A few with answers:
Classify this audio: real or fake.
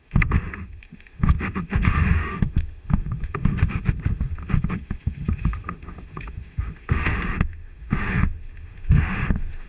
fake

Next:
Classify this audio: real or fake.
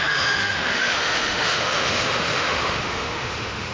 fake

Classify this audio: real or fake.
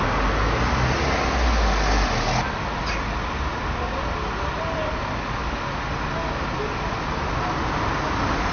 real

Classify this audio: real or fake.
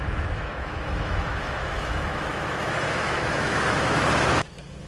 fake